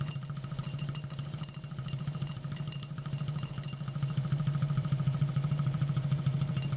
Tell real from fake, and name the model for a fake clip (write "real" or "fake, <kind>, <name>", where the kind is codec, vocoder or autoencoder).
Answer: fake, vocoder, BigVGAN v2